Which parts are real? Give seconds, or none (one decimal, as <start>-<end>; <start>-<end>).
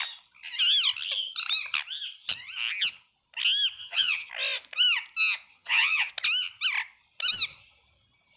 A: 0.0-3.8; 4.3-5.5; 6.1-8.4